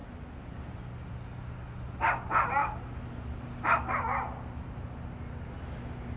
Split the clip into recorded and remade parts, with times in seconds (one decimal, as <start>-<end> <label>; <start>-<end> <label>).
0.0-6.2 recorded